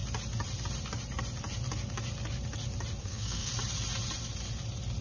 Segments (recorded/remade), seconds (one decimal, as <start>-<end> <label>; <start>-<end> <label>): 0.0-3.0 recorded; 3.0-3.5 remade; 3.5-5.0 recorded